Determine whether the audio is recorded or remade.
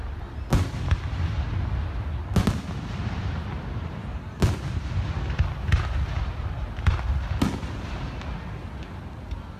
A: recorded